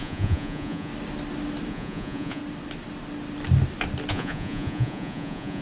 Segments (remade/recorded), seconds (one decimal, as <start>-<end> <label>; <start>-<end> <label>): 0.0-0.9 remade; 0.9-1.7 recorded; 1.7-2.4 remade; 2.4-4.1 recorded; 4.1-5.6 remade